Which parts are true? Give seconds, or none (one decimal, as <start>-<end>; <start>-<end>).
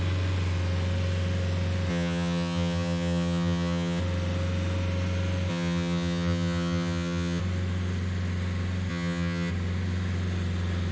0.0-1.9; 4.0-5.5; 7.4-8.9; 9.5-10.9